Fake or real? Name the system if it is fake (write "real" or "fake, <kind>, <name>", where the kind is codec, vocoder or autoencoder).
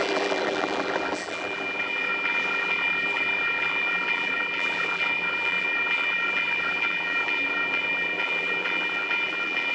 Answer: fake, vocoder, BigVGAN v2